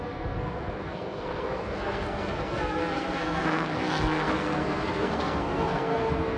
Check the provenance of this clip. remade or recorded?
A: remade